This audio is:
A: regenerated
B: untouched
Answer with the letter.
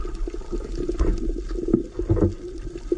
B